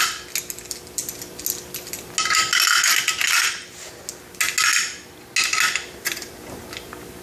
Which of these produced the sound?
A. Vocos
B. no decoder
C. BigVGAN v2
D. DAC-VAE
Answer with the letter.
B